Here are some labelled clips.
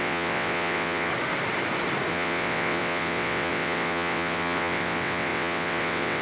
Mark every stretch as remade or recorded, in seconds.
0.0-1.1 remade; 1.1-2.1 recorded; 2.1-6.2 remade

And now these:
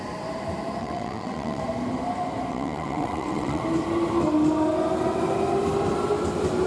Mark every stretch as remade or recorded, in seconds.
0.0-0.8 recorded; 0.8-1.6 remade; 1.6-2.5 recorded; 2.5-3.6 remade; 3.6-6.7 recorded

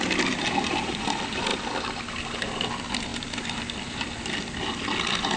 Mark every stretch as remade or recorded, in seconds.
0.0-5.4 recorded

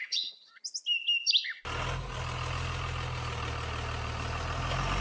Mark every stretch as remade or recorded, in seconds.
0.0-0.6 remade; 0.6-5.0 recorded

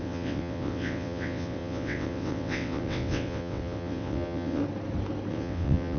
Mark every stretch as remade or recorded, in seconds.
0.0-4.6 remade; 4.6-5.3 recorded; 5.3-6.0 remade

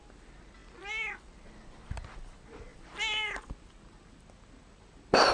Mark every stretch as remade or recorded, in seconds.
0.0-5.3 recorded

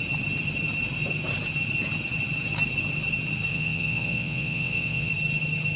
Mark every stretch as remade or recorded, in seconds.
0.0-3.5 recorded; 3.5-5.1 remade; 5.1-5.8 recorded

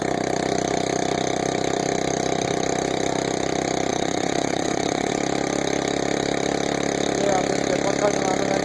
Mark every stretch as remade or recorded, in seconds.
0.0-3.9 recorded; 3.9-5.1 remade; 5.1-8.6 recorded